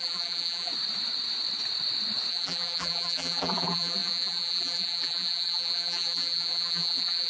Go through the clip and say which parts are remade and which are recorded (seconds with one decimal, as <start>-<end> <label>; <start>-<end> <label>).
0.0-0.7 remade; 0.7-2.3 recorded; 2.3-7.3 remade